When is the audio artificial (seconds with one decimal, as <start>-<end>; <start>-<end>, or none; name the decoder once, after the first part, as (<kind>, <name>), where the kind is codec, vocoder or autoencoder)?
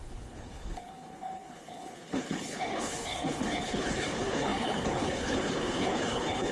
0.0-6.5 (codec, HILCodec)